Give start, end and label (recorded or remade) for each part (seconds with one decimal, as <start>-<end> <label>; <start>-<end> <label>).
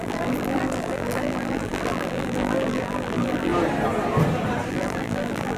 0.0-3.5 remade; 3.5-4.7 recorded; 4.7-5.6 remade